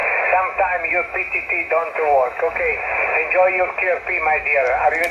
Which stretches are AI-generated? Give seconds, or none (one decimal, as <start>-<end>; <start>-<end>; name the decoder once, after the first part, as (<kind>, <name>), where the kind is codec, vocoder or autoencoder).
0.9-2.7 (autoencoder, DAC-VAE)